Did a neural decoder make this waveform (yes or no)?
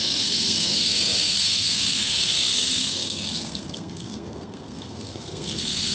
yes